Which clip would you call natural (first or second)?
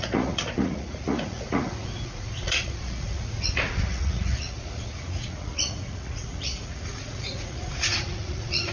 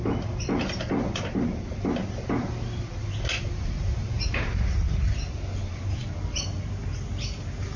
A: second